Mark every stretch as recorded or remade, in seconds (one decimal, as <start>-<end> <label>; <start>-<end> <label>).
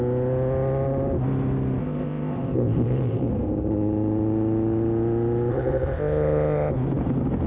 0.0-1.8 recorded; 1.8-3.3 remade; 3.3-5.5 recorded; 5.5-6.7 remade; 6.7-7.5 recorded